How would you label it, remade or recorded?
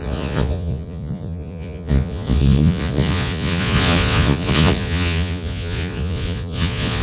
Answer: remade